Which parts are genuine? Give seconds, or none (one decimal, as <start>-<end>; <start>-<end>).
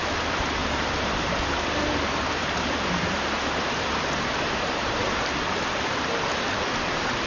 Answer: 0.0-0.6; 5.0-7.3